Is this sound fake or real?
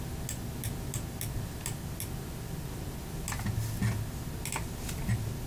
real